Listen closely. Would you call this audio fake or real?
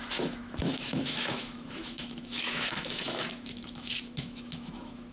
fake